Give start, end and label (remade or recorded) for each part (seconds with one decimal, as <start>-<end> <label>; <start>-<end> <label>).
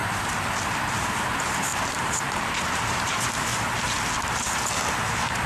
0.0-0.7 recorded; 0.7-3.5 remade; 3.5-4.8 recorded; 4.8-5.5 remade